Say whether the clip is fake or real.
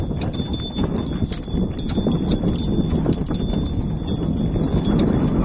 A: real